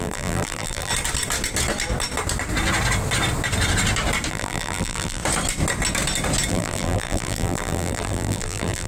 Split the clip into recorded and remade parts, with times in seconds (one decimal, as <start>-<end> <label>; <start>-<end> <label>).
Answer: 0.0-0.9 remade; 0.9-4.3 recorded; 4.3-5.2 remade; 5.2-6.5 recorded; 6.5-8.9 remade